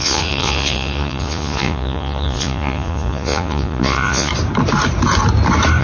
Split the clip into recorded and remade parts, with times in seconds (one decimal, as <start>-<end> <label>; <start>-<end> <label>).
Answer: 0.0-4.3 remade; 4.3-5.8 recorded